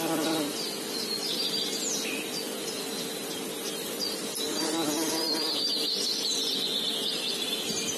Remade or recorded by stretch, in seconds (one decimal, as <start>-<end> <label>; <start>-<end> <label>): 0.0-3.6 recorded; 3.6-5.3 remade; 5.3-6.7 recorded; 6.7-8.0 remade